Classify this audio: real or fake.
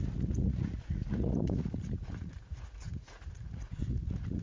fake